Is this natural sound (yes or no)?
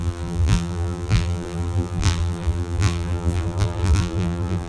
no